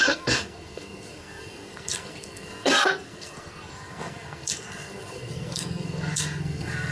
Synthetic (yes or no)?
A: yes